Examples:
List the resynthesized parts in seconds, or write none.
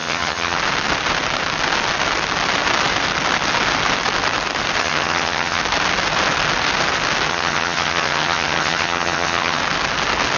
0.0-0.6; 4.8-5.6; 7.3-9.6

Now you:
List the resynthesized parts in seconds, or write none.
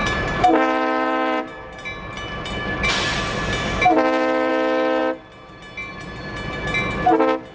0.0-4.5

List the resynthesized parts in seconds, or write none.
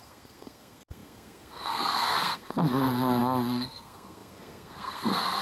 0.0-5.4